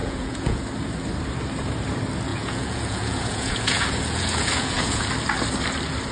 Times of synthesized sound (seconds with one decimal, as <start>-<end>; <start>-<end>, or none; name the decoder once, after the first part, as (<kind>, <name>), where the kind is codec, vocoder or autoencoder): 0.0-0.6 (vocoder, Vocos); 2.3-5.1